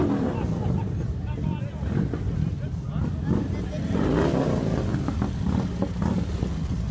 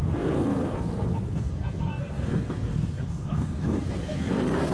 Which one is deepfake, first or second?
second